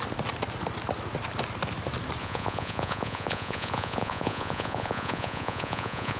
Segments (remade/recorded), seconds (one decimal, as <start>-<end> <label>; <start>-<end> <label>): 0.0-2.2 recorded; 2.2-6.2 remade